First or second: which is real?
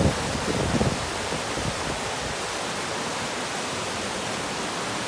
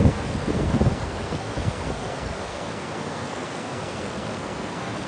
first